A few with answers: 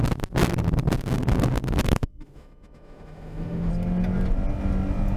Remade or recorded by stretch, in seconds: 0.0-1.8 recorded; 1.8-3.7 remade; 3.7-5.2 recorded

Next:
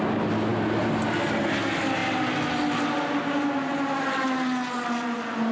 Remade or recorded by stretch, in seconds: 0.0-5.5 recorded

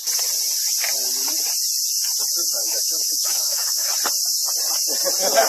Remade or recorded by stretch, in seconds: 0.0-2.6 recorded; 2.6-3.9 remade; 3.9-5.5 recorded

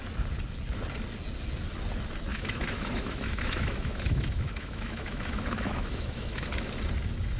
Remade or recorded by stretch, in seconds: 0.0-2.3 recorded; 2.3-6.7 remade; 6.7-7.4 recorded

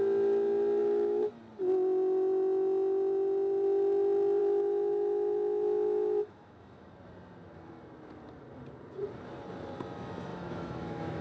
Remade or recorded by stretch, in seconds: 0.0-0.8 recorded; 0.8-1.3 remade; 1.3-4.4 recorded; 4.4-6.9 remade; 6.9-10.3 recorded; 10.3-11.2 remade

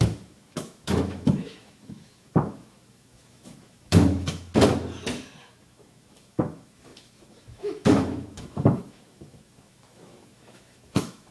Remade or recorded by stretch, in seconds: 0.0-4.5 remade; 4.5-5.4 recorded; 5.4-11.3 remade

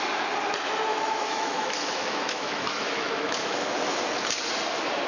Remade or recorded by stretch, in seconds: 0.0-0.9 recorded; 0.9-4.0 remade; 4.0-5.1 recorded